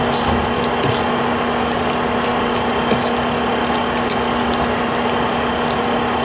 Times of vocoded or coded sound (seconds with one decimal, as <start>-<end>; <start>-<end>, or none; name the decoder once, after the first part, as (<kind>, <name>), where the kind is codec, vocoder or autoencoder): none